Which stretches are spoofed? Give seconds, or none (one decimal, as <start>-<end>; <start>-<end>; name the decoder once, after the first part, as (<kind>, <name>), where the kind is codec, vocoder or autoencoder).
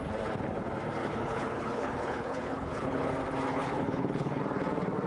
1.0-3.1 (codec, HILCodec); 3.5-4.4